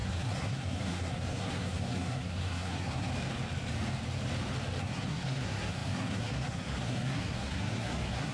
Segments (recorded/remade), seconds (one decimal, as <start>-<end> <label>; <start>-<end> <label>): 0.0-3.1 remade; 3.1-4.8 recorded; 4.8-8.3 remade